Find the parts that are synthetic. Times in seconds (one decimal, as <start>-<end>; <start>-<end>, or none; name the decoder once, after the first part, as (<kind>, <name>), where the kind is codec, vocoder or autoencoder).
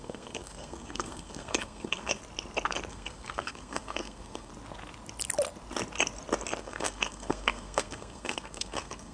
0.0-2.2 (codec, SNAC); 2.9-4.5; 6.6-9.1